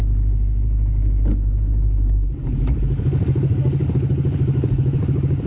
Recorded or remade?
remade